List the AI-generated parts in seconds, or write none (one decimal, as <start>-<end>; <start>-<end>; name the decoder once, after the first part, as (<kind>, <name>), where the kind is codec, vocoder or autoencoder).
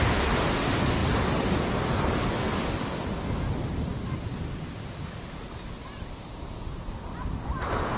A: none